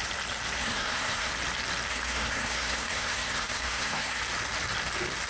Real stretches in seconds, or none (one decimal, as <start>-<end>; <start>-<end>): 0.0-0.6; 1.3-1.9; 4.2-5.3